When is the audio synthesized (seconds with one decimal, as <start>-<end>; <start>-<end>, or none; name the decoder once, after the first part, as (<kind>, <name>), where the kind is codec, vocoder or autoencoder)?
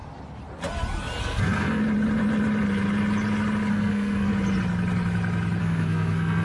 1.2-1.8 (codec, SNAC); 3.7-4.3; 5.6-6.4